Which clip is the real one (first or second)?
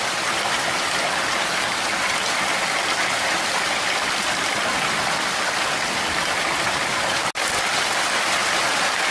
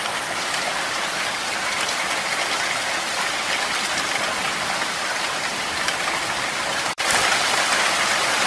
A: first